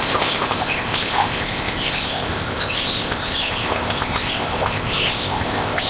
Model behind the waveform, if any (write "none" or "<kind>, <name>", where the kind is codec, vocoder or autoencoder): codec, ZipCodec